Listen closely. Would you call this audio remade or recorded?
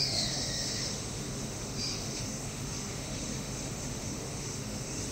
remade